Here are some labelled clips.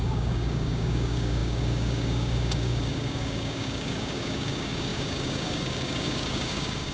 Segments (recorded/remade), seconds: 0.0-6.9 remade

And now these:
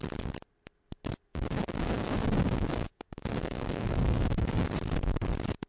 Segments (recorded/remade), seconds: 0.0-1.3 recorded; 1.3-4.7 remade; 4.7-5.7 recorded

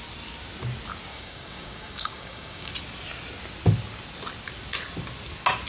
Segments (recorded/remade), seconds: 0.0-1.1 recorded; 1.1-2.7 remade; 2.7-5.7 recorded

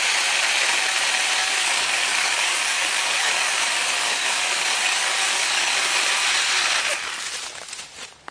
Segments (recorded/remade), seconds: 0.0-1.4 recorded; 1.4-5.9 remade; 5.9-8.3 recorded

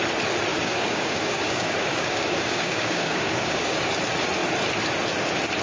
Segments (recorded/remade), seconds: 0.0-0.5 recorded; 0.5-3.9 remade; 3.9-5.6 recorded

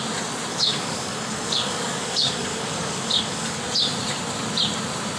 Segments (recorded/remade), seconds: 0.0-0.5 recorded; 0.5-3.6 remade; 3.6-5.2 recorded

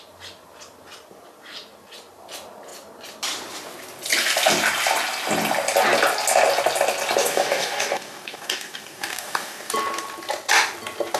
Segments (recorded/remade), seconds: 0.0-7.2 recorded; 7.2-9.7 remade; 9.7-11.2 recorded

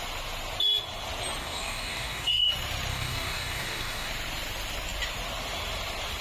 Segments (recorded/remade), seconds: 0.0-1.4 recorded; 1.4-2.5 remade; 2.5-2.9 recorded; 2.9-4.1 remade; 4.1-6.2 recorded